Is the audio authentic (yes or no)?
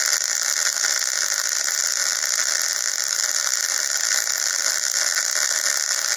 yes